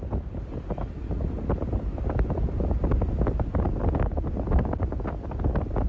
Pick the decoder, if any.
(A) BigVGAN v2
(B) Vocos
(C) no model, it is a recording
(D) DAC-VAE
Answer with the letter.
C